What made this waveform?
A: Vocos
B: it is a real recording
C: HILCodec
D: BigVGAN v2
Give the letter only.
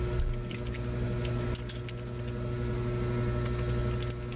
B